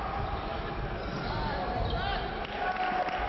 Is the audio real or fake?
real